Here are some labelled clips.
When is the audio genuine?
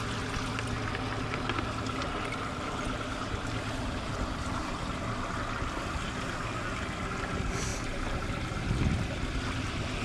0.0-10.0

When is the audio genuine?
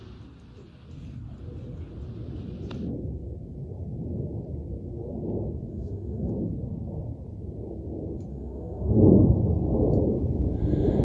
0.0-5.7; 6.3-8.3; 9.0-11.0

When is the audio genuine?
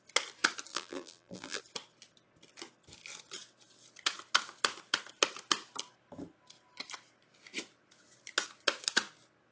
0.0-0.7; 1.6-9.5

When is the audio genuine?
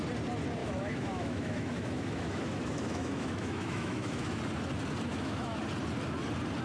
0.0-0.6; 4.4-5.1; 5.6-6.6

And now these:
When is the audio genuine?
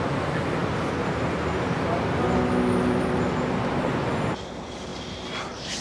0.0-5.8